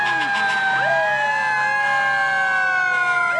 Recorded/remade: recorded